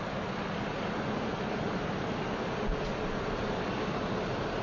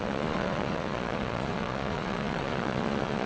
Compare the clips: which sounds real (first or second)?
first